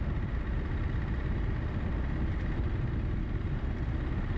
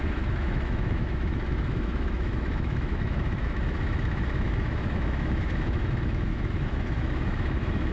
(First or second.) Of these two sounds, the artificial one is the second